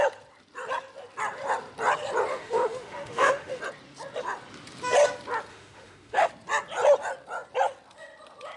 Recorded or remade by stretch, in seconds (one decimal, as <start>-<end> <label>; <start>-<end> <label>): 0.0-2.3 recorded; 2.3-3.6 remade; 3.6-5.5 recorded; 5.5-6.3 remade; 6.3-8.6 recorded